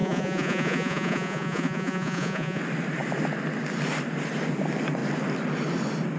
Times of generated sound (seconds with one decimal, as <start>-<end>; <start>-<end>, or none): 0.0-2.6